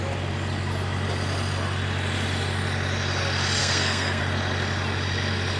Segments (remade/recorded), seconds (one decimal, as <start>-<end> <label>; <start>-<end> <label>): 0.0-3.6 recorded; 3.6-4.2 remade; 4.2-5.6 recorded